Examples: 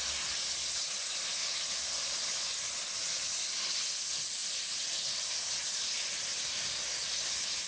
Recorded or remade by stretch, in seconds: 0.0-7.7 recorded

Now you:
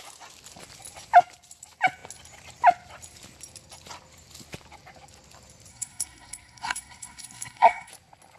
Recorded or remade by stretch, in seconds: 0.0-5.7 recorded; 5.7-7.9 remade; 7.9-8.4 recorded

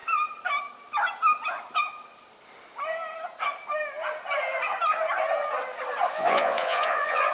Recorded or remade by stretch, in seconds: 0.0-6.1 recorded; 6.1-7.3 remade